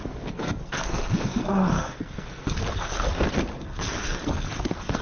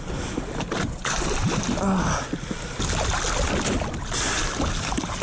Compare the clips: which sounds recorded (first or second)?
second